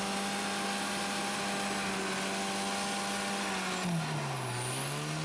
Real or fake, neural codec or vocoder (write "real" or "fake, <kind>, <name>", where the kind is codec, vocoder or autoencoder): real